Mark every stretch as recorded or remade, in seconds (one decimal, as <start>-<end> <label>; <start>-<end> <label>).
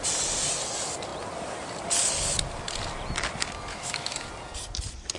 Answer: 0.0-3.7 recorded; 3.7-4.3 remade; 4.3-5.2 recorded